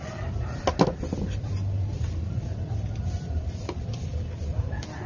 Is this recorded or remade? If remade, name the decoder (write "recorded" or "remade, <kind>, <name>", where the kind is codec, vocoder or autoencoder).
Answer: recorded